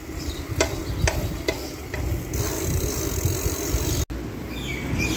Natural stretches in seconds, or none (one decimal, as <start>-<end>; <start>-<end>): 0.0-5.2

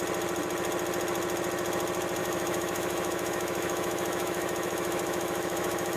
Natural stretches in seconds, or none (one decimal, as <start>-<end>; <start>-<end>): 0.0-2.2

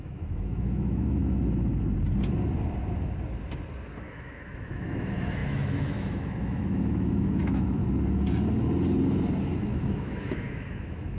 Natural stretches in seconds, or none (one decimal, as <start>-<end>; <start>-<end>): 1.2-4.0; 7.8-9.4

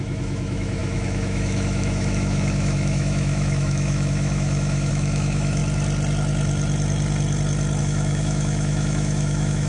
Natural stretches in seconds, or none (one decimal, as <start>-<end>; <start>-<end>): 5.6-7.8